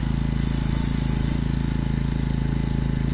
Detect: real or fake real